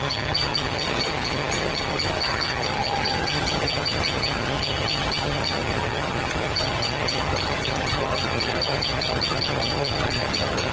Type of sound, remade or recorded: remade